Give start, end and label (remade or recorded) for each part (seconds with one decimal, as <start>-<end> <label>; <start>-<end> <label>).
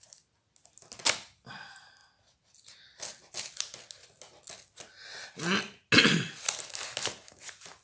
0.0-7.8 recorded